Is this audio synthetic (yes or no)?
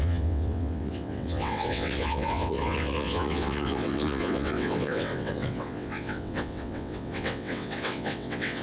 yes